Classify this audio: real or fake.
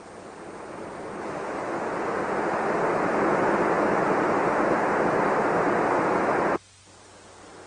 real